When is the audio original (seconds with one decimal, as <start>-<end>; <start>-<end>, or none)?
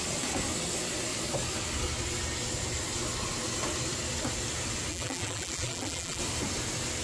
0.0-4.9; 6.2-7.0